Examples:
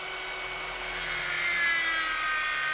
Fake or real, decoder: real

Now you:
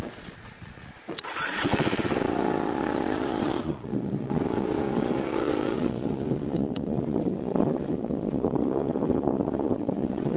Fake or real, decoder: fake, vocoder, Vocos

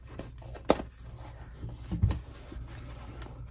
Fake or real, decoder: real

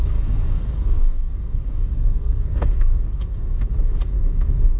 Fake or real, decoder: fake, codec, SNAC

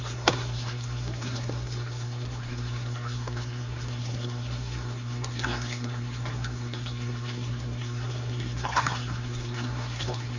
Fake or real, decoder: fake, codec, SNAC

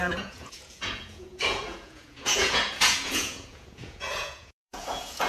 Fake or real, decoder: fake, vocoder, Vocos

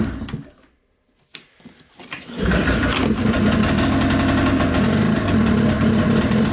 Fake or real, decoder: real